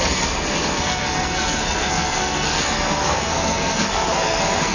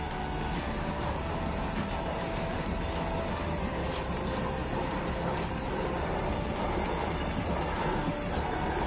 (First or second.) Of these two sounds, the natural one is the second